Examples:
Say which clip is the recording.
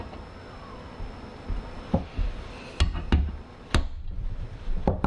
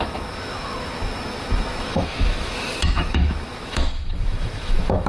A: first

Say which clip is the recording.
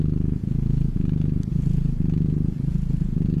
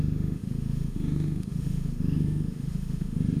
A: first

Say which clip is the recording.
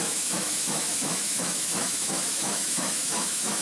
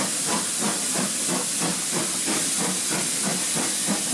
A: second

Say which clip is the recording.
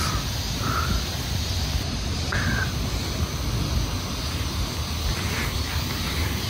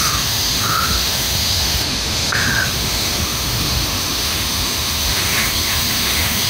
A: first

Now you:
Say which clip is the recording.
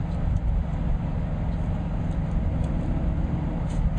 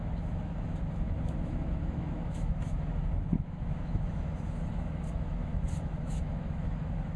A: first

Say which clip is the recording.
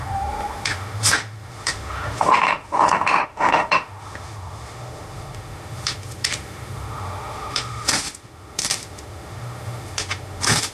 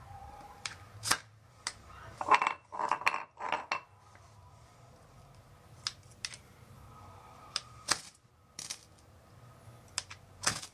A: second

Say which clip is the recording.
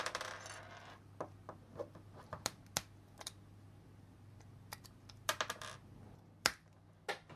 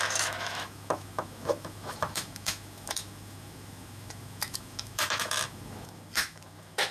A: first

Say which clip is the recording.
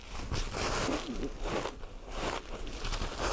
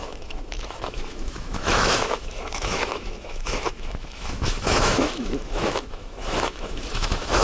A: first